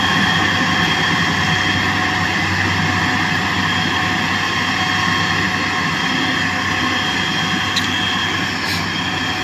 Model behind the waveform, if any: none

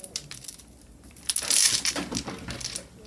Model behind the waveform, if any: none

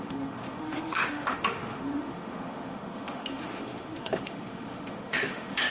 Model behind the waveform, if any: autoencoder, DAC-VAE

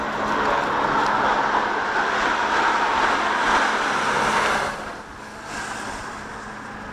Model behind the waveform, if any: none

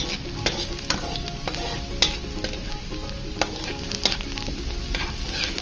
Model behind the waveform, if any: none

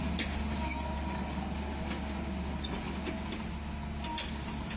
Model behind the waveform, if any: none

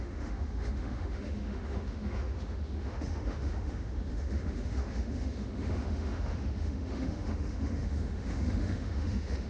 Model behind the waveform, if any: autoencoder, DAC-VAE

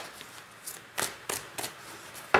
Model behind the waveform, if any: none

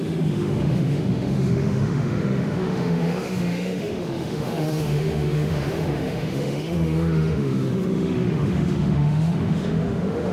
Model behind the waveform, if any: autoencoder, DAC-VAE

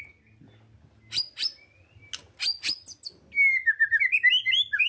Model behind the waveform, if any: none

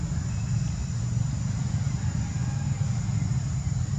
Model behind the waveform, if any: none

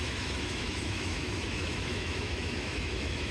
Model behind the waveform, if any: autoencoder, DAC-VAE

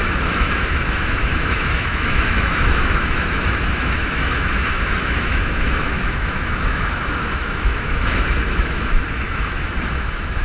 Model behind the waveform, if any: autoencoder, DAC-VAE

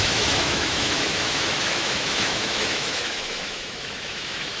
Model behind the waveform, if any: autoencoder, DAC-VAE